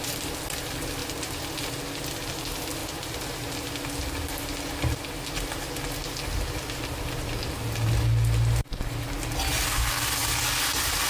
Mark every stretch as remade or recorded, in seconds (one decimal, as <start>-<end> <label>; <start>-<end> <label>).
0.0-11.1 recorded